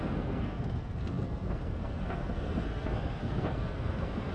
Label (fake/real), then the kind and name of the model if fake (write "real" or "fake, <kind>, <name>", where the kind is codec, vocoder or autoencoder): fake, codec, SNAC